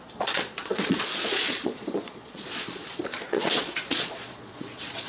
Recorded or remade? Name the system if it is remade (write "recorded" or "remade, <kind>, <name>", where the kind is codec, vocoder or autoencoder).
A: remade, vocoder, Vocos